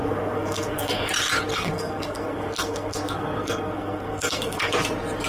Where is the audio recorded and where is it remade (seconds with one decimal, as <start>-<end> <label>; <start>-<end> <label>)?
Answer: 0.0-1.1 remade; 1.1-1.5 recorded; 1.5-4.7 remade; 4.7-5.3 recorded